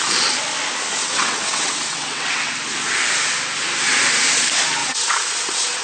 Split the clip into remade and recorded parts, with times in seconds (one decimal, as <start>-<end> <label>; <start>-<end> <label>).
0.0-1.0 recorded; 1.0-2.5 remade; 2.5-4.8 recorded; 4.8-5.8 remade